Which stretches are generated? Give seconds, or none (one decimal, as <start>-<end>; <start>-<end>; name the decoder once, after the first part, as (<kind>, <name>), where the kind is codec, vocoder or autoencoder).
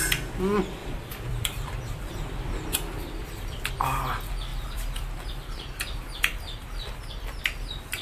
0.8-3.7 (vocoder, BigVGAN v2); 4.5-7.4